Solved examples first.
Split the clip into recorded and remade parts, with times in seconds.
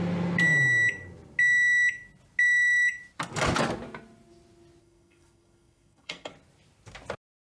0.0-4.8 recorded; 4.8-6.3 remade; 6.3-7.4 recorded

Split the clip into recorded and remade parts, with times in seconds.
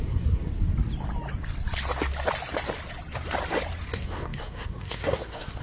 0.0-0.5 remade; 0.5-3.9 recorded; 3.9-5.6 remade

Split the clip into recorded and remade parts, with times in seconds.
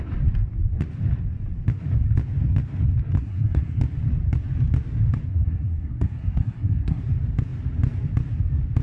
0.0-3.2 recorded; 3.2-3.8 remade; 3.8-5.3 recorded; 5.3-7.0 remade; 7.0-8.8 recorded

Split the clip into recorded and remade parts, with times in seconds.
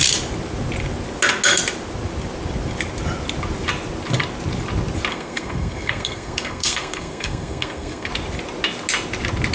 0.0-5.1 recorded; 5.1-8.1 remade; 8.1-9.5 recorded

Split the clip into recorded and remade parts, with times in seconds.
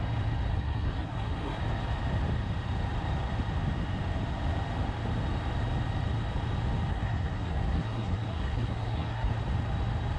0.0-0.5 recorded; 0.5-1.6 remade; 1.6-6.9 recorded; 6.9-9.3 remade; 9.3-10.2 recorded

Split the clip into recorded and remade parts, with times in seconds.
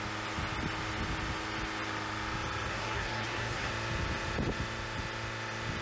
0.0-2.7 recorded; 2.7-3.7 remade; 3.7-5.8 recorded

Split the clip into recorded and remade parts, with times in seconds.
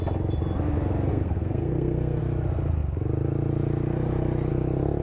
0.0-1.1 recorded; 1.1-2.2 remade; 2.2-5.0 recorded